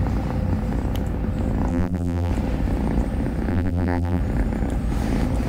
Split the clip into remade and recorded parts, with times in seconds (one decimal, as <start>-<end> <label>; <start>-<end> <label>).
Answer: 0.0-1.7 recorded; 1.7-2.3 remade; 2.3-3.5 recorded; 3.5-4.2 remade; 4.2-5.5 recorded